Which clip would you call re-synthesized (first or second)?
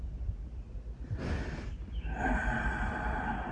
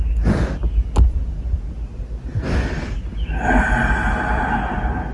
first